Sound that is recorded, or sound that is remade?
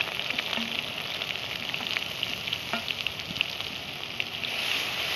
recorded